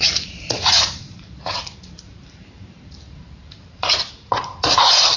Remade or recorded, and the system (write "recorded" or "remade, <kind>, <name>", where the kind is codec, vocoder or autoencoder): remade, vocoder, BigVGAN v2